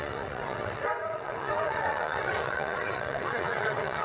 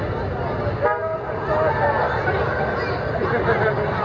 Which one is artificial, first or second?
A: first